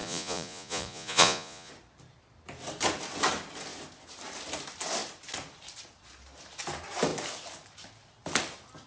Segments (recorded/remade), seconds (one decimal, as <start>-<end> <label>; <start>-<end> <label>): 0.0-1.7 remade; 1.7-8.9 recorded